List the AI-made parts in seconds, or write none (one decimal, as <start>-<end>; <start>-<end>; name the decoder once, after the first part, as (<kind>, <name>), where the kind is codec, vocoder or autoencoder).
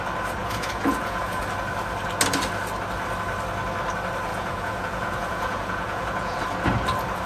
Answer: 0.4-1.4 (vocoder, Vocos); 4.3-6.4